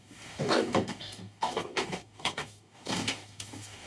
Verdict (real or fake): fake